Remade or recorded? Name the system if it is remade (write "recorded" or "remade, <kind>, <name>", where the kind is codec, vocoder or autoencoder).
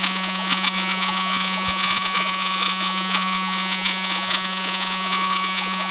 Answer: remade, vocoder, Vocos